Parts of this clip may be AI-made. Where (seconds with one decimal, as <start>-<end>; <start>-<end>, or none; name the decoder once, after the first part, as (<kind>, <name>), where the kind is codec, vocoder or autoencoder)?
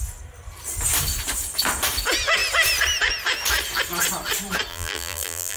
4.7-5.6 (vocoder, BigVGAN v2)